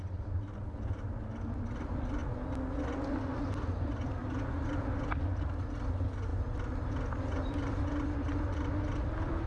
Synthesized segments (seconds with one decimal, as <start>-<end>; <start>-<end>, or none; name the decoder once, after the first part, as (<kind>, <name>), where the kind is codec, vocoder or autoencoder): none